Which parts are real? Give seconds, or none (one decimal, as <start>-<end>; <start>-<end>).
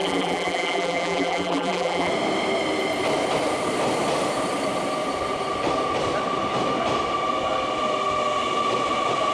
2.1-9.3